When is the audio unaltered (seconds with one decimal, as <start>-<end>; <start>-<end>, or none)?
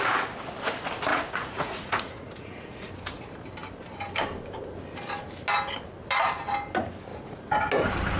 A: 0.0-1.1; 2.9-7.1; 7.7-8.2